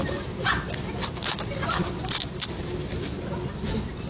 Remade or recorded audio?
recorded